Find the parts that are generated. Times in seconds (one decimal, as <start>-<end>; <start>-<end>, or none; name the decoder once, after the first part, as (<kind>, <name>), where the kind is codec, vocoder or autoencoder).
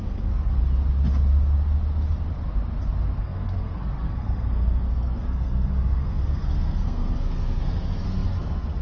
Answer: 0.0-0.6 (codec, SNAC); 3.2-8.8